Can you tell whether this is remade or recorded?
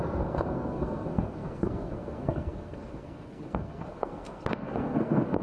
remade